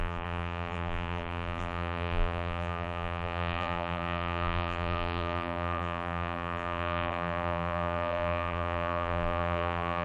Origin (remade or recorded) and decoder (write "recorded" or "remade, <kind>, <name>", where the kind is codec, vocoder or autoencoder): remade, vocoder, BigVGAN v2